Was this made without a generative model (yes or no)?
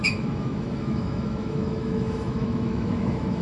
no